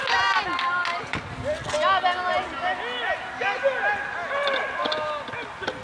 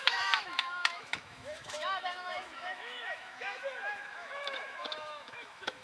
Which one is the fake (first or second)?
second